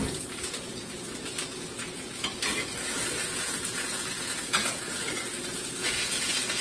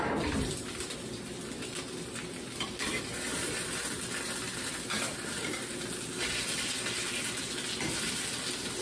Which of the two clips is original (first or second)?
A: second